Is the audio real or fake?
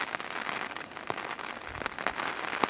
real